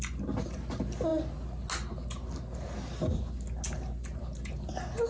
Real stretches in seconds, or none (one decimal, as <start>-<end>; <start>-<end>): 0.0-5.1